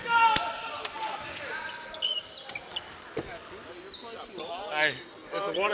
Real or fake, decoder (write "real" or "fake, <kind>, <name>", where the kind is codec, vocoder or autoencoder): real